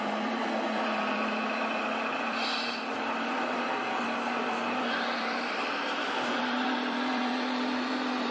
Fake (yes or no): yes